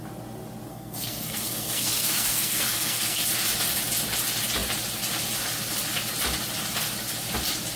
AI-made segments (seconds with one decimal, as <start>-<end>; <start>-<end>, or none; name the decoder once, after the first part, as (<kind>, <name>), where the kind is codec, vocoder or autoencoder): 0.7-3.2 (codec, SNAC)